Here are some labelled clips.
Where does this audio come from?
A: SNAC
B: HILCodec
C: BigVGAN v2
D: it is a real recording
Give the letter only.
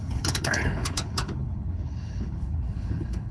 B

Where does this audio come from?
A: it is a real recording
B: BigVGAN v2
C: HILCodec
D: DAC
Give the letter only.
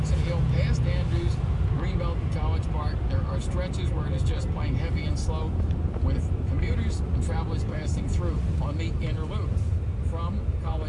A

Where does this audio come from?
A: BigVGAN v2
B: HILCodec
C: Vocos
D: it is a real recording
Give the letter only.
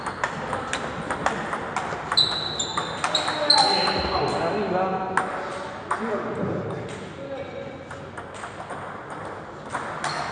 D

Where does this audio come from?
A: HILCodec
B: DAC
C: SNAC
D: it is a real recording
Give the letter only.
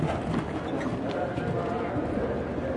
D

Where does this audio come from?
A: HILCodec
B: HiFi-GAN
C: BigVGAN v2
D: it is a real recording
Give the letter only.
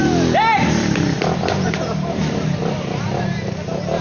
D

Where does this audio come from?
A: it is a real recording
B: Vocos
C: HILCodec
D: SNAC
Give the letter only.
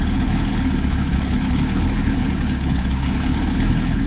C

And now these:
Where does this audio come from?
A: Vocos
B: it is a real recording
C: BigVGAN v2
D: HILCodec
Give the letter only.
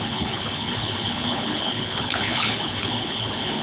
D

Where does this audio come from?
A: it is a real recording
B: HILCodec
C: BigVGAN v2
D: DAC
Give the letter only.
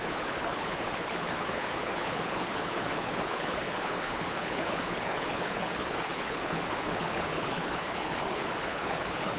B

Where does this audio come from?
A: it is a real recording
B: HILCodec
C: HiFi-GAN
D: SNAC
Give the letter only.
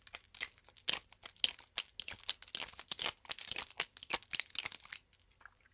A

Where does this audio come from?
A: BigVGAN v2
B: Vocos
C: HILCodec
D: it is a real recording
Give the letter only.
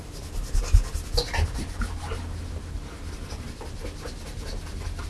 D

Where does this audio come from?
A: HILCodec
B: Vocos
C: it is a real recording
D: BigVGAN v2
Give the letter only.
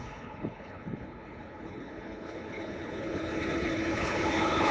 A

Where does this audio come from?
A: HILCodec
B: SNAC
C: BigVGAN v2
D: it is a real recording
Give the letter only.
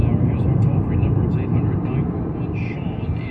D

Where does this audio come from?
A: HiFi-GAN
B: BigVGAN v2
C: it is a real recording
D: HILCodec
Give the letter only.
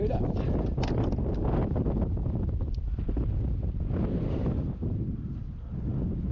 C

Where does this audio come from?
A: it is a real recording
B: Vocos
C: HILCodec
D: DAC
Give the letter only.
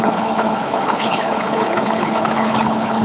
C